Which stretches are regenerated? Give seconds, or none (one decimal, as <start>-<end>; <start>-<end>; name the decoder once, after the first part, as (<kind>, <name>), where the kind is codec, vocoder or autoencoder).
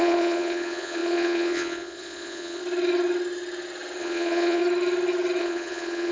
0.0-2.6 (vocoder, Vocos); 4.0-4.6; 5.4-6.1